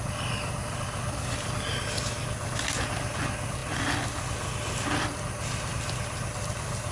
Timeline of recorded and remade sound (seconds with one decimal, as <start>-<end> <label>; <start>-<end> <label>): 0.0-6.9 recorded